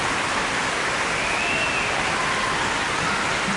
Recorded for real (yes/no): yes